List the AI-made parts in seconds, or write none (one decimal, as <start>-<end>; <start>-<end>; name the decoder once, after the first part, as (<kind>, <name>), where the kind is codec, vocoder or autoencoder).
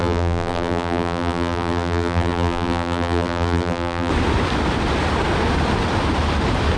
0.0-4.1 (vocoder, BigVGAN v2)